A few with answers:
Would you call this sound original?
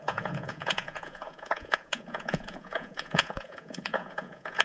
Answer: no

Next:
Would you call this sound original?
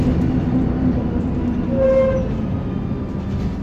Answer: yes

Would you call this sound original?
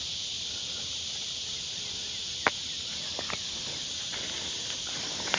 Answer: yes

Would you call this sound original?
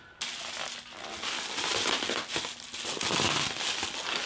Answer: yes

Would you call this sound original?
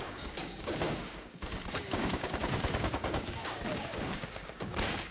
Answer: no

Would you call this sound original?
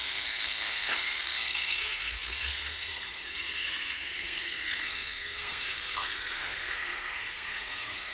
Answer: no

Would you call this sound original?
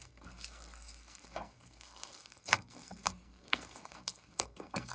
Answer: no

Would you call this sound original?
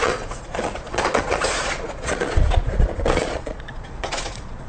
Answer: no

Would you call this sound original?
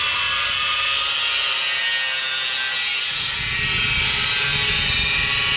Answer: yes